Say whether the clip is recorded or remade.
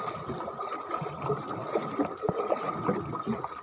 recorded